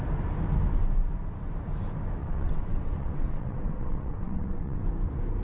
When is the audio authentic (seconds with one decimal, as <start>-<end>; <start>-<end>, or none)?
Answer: 0.0-2.2; 4.8-5.4